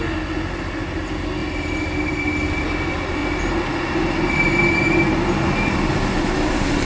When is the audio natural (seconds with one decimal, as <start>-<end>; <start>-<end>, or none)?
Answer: 0.0-1.4; 2.6-3.2; 3.8-6.9